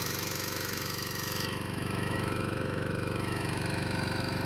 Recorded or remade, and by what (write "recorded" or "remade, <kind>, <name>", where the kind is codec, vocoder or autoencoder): remade, autoencoder, DAC-VAE